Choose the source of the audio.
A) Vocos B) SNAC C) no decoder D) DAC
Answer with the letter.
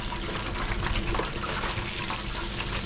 C